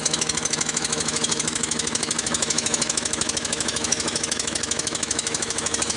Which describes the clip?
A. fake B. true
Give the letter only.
A